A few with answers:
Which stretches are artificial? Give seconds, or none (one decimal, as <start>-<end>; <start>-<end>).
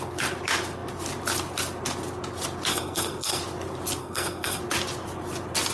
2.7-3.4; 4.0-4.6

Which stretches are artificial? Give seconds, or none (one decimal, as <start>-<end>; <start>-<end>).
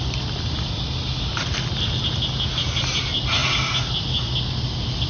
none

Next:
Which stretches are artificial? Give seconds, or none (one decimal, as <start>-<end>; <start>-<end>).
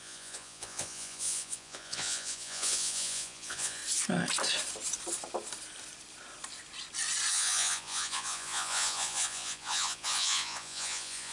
0.0-3.8; 7.3-11.3